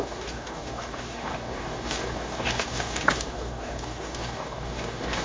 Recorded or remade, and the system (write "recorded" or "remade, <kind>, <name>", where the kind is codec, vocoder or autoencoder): remade, codec, DAC